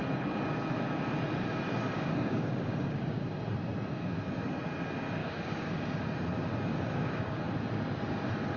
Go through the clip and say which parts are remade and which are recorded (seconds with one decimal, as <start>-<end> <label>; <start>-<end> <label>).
0.0-1.9 recorded; 1.9-3.2 remade; 3.2-5.2 recorded; 5.2-6.0 remade; 6.0-6.7 recorded; 6.7-7.4 remade; 7.4-8.6 recorded